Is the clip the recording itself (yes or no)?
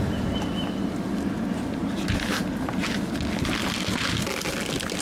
yes